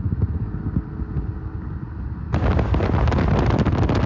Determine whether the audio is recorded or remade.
recorded